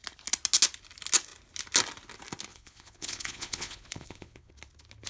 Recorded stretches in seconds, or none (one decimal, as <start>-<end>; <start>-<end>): 0.0-2.5; 4.5-5.1